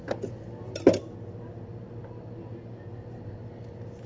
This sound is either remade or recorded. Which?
recorded